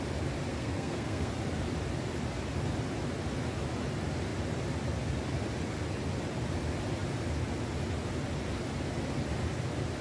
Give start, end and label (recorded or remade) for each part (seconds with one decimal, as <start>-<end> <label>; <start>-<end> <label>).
0.0-0.5 recorded; 0.5-1.3 remade; 1.3-10.0 recorded